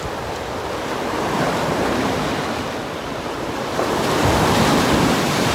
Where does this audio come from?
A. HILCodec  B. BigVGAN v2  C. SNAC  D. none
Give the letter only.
D